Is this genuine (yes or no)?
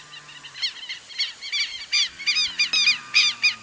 yes